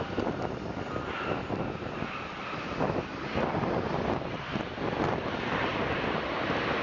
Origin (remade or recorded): recorded